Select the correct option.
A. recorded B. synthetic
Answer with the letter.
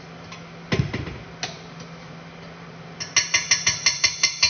A